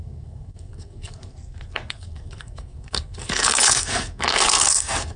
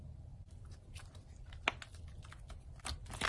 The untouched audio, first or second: second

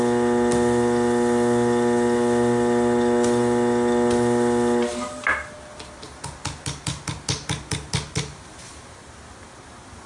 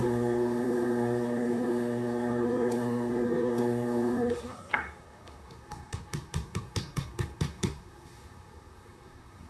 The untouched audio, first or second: first